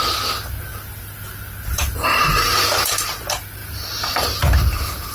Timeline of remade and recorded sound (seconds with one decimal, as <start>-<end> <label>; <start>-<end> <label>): 0.0-5.1 remade